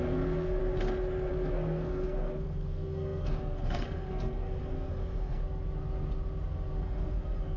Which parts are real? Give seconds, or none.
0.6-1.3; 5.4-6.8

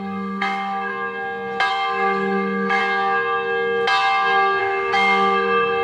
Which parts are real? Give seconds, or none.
0.9-1.7; 2.8-4.6

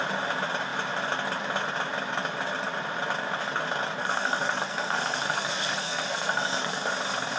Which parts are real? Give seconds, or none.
0.0-4.0; 6.9-7.4

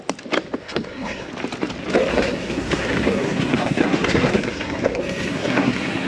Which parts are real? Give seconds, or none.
0.0-0.6; 1.3-2.1

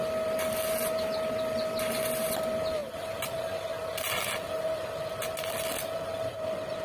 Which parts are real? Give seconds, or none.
0.0-6.8